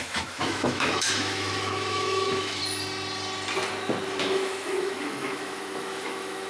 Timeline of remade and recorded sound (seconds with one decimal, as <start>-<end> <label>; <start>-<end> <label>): 0.0-2.6 remade; 2.6-4.2 recorded; 4.2-6.5 remade